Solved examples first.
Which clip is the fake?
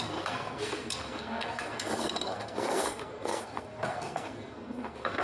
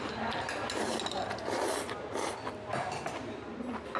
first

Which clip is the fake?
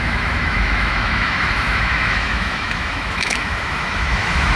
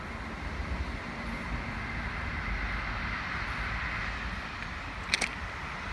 first